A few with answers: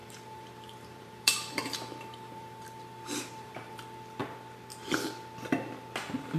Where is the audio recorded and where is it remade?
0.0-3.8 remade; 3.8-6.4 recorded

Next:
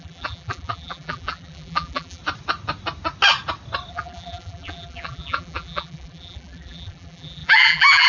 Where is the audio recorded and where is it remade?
0.0-2.2 remade; 2.2-3.9 recorded; 3.9-8.1 remade

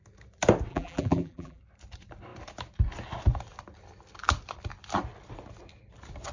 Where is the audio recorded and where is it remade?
0.0-0.7 recorded; 0.7-1.6 remade; 1.6-6.3 recorded

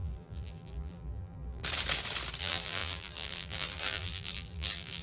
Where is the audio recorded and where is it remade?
0.0-1.6 remade; 1.6-2.4 recorded; 2.4-5.0 remade

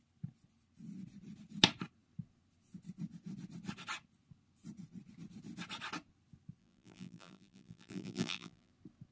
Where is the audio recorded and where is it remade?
0.0-6.6 recorded; 6.6-8.7 remade; 8.7-9.1 recorded

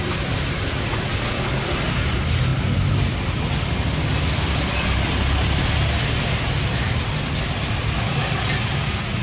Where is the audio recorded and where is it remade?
0.0-9.2 recorded